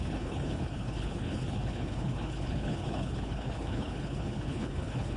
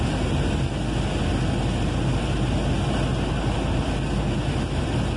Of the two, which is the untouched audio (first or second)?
second